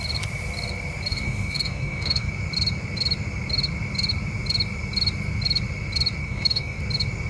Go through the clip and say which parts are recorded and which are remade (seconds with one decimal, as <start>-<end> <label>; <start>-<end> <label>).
0.0-1.1 recorded; 1.1-2.3 remade; 2.3-6.2 recorded; 6.2-6.8 remade; 6.8-7.3 recorded